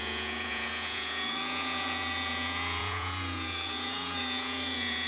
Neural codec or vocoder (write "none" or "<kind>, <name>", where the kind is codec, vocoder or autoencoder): vocoder, Vocos